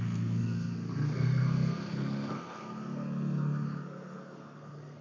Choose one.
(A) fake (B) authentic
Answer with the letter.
A